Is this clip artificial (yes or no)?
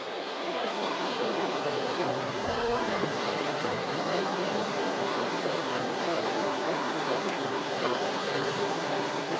yes